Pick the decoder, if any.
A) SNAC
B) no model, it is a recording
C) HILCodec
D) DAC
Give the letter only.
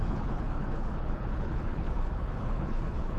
C